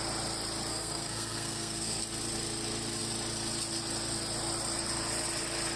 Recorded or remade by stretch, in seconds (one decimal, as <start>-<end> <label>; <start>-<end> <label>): 0.0-0.7 recorded; 0.7-2.0 remade; 2.0-5.8 recorded